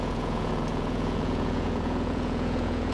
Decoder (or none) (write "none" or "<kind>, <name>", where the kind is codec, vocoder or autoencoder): vocoder, Vocos